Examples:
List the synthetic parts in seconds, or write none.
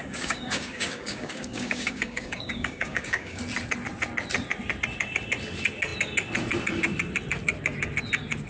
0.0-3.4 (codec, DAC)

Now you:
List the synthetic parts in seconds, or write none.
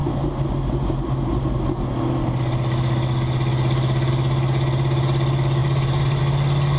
5.6-6.2 (vocoder, BigVGAN v2)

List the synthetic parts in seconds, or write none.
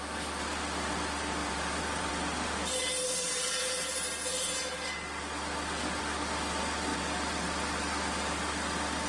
1.4-2.1 (vocoder, BigVGAN v2)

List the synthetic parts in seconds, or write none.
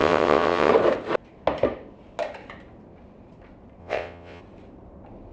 0.0-0.7 (vocoder, WaveNeXt); 3.8-4.4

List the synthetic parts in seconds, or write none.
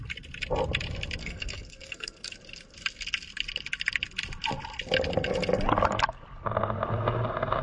1.2-2.3 (codec, SNAC)